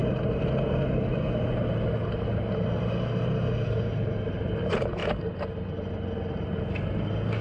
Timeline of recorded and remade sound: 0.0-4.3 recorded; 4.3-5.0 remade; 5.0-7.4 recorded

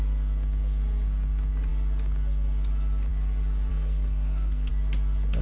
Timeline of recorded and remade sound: 0.0-3.7 recorded; 3.7-4.7 remade; 4.7-5.4 recorded

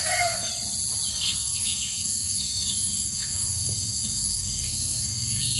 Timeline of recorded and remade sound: 0.0-0.5 remade; 0.5-1.1 recorded; 1.1-5.6 remade